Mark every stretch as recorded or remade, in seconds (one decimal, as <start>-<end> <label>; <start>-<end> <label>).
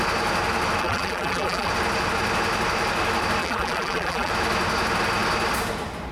0.0-0.8 recorded; 0.8-1.7 remade; 1.7-3.4 recorded; 3.4-4.3 remade; 4.3-6.1 recorded